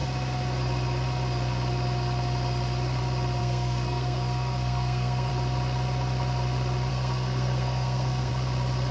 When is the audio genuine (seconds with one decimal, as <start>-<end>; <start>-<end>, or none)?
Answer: 0.0-3.4; 5.3-6.9; 8.3-8.9